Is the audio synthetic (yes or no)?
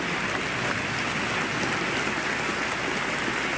no